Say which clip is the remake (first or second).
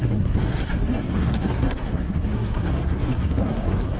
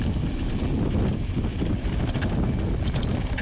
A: first